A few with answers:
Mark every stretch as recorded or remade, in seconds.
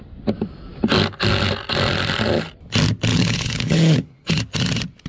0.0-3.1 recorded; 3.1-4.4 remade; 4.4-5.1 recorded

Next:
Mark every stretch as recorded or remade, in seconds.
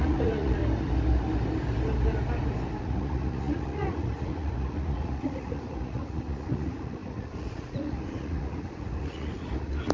0.0-0.6 remade; 0.6-2.8 recorded; 2.8-9.9 remade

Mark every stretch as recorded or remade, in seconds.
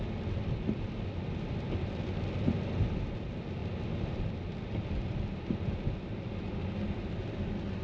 0.0-7.8 recorded